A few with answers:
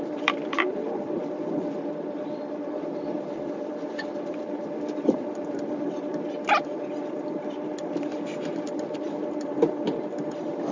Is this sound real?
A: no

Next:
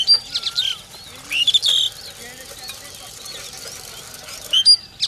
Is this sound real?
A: yes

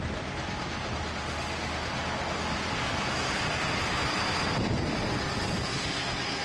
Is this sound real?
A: yes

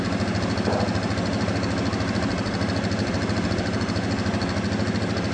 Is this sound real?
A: yes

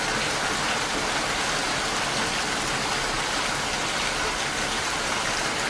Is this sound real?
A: yes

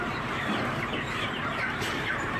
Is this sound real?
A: no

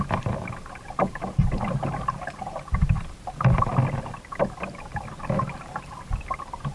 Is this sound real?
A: yes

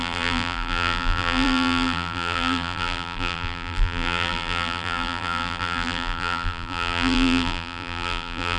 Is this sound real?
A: no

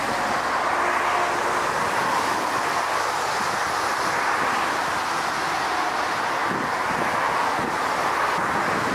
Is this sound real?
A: yes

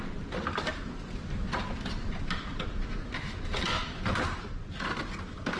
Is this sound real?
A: yes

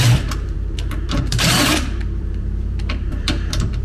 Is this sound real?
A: no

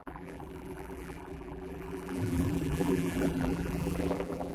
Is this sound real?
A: no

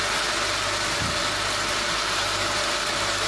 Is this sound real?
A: yes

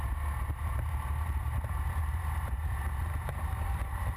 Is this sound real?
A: no